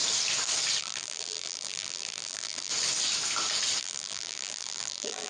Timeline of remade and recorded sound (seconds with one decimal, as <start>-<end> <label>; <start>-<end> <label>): 0.0-0.8 recorded; 0.8-2.7 remade; 2.7-3.8 recorded; 3.8-5.3 remade